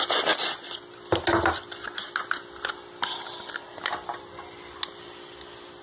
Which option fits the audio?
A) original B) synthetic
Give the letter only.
A